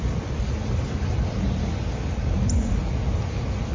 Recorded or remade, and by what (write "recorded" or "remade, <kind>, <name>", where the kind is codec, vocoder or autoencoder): recorded